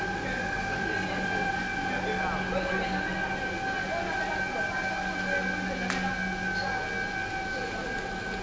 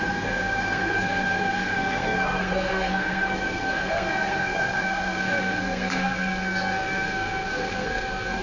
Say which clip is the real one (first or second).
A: first